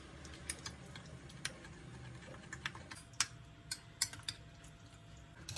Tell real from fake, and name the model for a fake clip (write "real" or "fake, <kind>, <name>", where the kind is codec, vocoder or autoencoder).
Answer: real